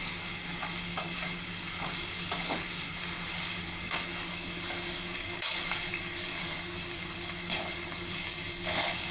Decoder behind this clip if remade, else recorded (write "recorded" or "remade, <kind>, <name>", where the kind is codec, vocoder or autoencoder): remade, codec, DAC